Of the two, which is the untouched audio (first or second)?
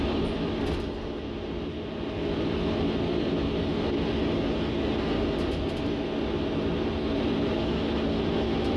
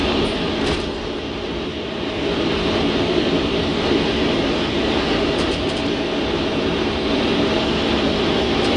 first